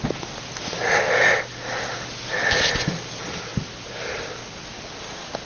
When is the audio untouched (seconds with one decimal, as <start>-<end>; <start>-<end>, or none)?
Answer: 0.0-5.5